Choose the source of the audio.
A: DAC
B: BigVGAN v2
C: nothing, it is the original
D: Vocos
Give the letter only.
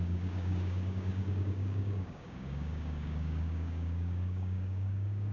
A